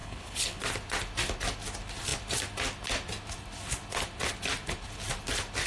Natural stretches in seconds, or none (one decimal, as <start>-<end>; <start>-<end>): 0.6-5.7